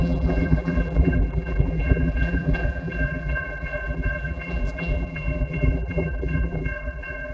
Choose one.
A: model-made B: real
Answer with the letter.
A